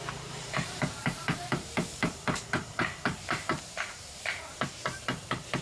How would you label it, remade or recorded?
remade